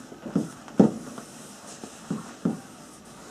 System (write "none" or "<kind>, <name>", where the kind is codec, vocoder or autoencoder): none